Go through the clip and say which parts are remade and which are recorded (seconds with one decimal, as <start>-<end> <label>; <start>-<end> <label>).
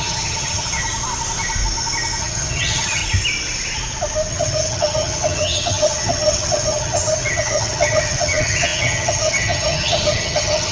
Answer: 0.0-0.8 remade; 0.8-2.2 recorded; 2.2-3.0 remade; 3.0-4.3 recorded; 4.3-10.7 remade